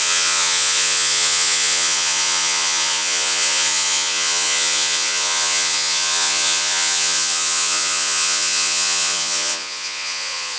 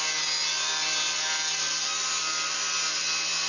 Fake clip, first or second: first